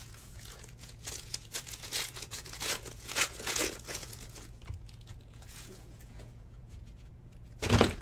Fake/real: fake